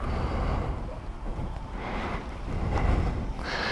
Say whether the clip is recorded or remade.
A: recorded